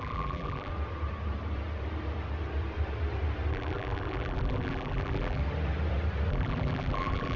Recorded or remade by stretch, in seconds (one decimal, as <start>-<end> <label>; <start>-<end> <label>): 0.0-0.7 remade; 0.7-3.5 recorded; 3.5-5.4 remade; 5.4-6.3 recorded; 6.3-7.4 remade